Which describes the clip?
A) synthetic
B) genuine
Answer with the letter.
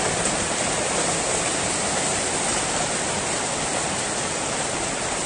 B